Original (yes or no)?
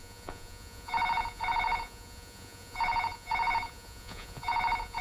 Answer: no